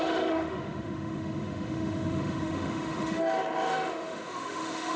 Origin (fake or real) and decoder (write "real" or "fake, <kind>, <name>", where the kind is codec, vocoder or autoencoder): fake, autoencoder, DAC-VAE